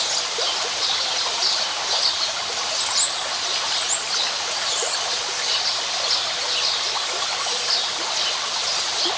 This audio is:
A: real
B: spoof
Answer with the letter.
A